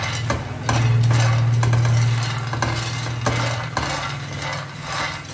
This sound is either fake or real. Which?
real